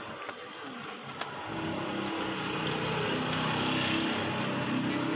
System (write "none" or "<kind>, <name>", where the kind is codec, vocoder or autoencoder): none